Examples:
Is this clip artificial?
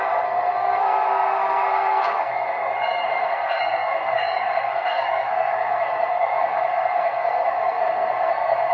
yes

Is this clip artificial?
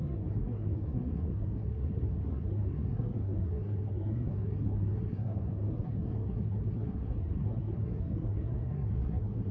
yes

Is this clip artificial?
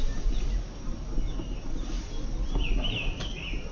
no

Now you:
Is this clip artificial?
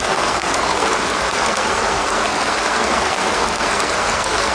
yes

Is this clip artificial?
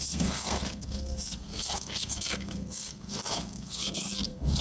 yes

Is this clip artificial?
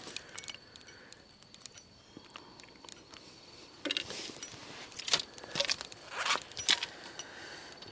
no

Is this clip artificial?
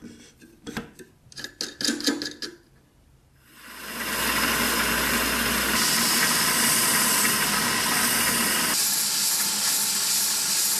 no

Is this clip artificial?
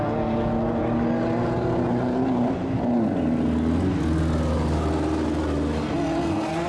no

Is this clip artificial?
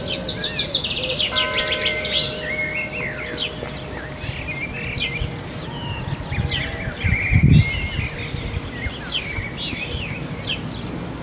no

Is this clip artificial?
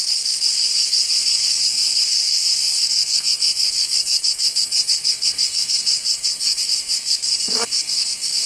yes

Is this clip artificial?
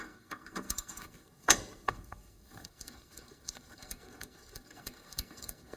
yes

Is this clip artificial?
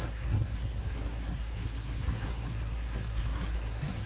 yes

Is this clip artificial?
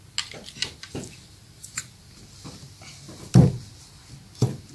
no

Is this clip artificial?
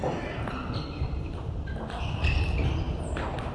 no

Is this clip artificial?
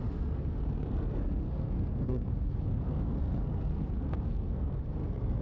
yes